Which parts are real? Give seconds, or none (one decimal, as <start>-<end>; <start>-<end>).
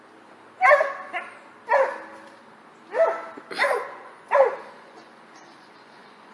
0.0-3.7